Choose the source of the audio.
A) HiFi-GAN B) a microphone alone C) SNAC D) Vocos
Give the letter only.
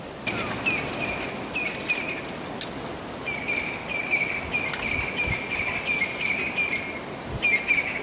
B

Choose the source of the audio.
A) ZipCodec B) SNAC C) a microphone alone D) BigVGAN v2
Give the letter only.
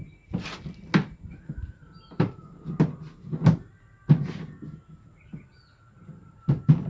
C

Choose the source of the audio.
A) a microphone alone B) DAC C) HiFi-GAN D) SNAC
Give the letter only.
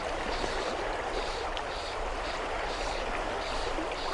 A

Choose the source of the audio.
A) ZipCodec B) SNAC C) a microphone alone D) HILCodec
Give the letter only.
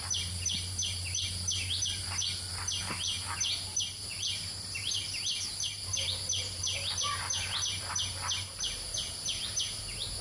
C